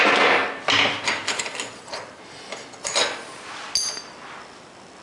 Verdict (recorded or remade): recorded